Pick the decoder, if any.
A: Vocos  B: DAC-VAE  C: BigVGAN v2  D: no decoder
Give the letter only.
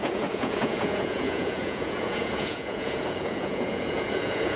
A